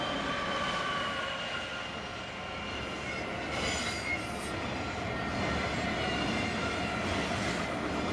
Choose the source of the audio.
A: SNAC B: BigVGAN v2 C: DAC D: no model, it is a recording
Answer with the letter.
D